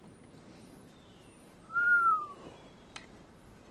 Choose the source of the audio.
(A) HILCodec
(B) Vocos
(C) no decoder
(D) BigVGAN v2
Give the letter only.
D